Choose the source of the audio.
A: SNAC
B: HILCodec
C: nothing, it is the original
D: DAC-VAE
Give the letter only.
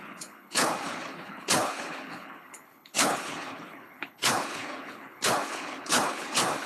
B